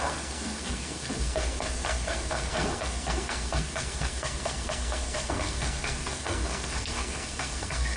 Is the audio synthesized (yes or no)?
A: yes